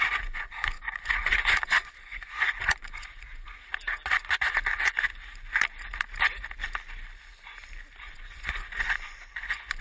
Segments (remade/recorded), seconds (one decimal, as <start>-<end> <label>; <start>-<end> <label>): 0.0-3.7 remade; 3.7-8.0 recorded; 8.0-9.8 remade